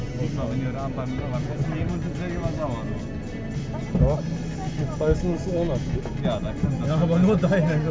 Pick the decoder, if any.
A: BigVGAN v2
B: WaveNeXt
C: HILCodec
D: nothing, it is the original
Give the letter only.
D